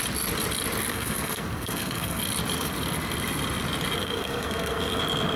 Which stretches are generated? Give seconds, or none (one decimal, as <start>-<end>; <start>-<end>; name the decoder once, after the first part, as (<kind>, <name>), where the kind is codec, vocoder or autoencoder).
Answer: 0.9-2.2 (codec, SNAC); 4.0-5.0